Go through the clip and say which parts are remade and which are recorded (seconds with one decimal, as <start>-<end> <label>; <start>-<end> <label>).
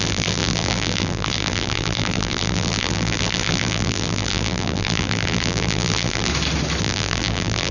0.0-6.3 remade; 6.3-6.8 recorded; 6.8-7.7 remade